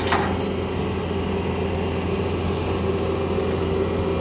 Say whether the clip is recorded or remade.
recorded